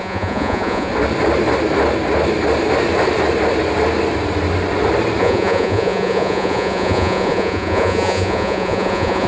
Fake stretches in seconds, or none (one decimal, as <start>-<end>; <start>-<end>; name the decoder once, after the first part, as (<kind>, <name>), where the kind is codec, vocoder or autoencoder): 0.0-0.9 (vocoder, Vocos); 5.2-9.3

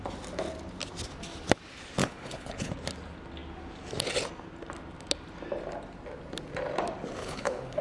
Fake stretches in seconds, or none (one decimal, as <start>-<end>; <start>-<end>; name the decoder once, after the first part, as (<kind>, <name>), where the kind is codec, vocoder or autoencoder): 2.0-2.7 (codec, HILCodec); 7.2-7.8

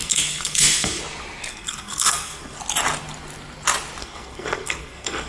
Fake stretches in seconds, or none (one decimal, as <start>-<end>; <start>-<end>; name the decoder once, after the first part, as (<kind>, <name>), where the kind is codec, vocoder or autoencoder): 0.0-1.0 (codec, SNAC); 1.5-2.6; 4.0-5.3

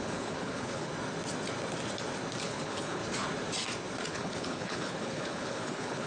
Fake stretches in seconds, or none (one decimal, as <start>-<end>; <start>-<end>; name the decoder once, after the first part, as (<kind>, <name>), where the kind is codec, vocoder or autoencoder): 0.0-0.9 (codec, HILCodec); 2.4-3.0; 4.1-6.1